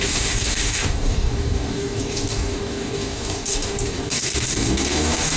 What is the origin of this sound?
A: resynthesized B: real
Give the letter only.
A